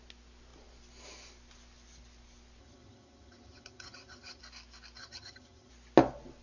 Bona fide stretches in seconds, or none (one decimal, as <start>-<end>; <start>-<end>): 0.0-2.6; 4.4-5.0; 5.7-6.4